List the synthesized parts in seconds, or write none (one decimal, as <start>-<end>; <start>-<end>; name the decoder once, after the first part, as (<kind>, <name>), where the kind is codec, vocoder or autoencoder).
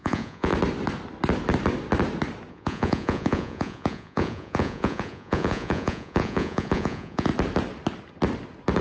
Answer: 0.0-0.5 (vocoder, Vocos); 2.5-7.3